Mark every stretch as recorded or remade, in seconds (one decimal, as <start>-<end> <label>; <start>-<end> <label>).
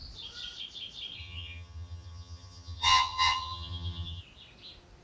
0.0-1.2 recorded; 1.2-4.2 remade; 4.2-5.0 recorded